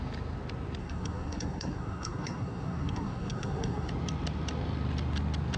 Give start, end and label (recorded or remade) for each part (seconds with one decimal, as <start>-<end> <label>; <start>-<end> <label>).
0.0-0.8 recorded; 0.8-3.9 remade; 3.9-5.6 recorded